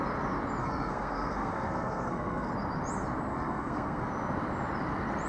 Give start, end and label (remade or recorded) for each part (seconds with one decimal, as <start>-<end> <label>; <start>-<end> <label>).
0.0-0.6 recorded; 0.6-2.5 remade; 2.5-3.3 recorded; 3.3-4.1 remade; 4.1-5.3 recorded